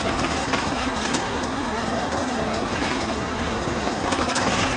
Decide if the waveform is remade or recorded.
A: remade